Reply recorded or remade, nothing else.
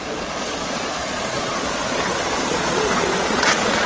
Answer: remade